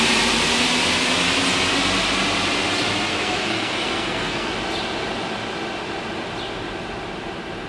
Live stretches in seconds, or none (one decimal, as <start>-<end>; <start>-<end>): 0.0-3.1; 4.5-7.7